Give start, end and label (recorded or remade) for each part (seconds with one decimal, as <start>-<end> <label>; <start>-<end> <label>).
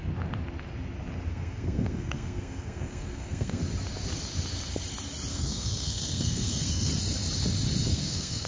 0.0-1.3 recorded; 1.3-3.6 remade; 3.6-5.3 recorded; 5.3-6.9 remade; 6.9-7.9 recorded; 7.9-8.5 remade